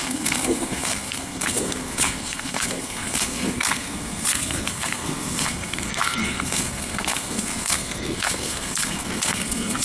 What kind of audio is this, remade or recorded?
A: remade